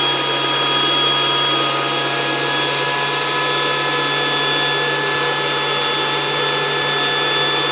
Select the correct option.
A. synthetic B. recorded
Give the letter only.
B